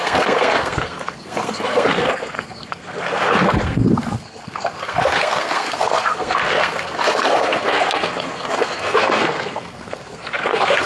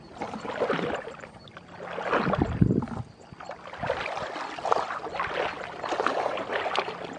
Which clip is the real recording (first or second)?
second